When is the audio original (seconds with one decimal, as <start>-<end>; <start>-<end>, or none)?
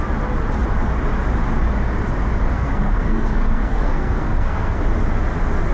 0.0-2.5; 4.8-5.7